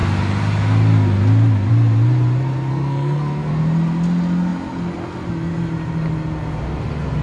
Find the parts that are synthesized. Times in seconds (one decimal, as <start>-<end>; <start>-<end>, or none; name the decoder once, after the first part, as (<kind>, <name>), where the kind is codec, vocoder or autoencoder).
2.7-3.5 (codec, SNAC)